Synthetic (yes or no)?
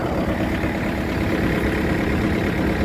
no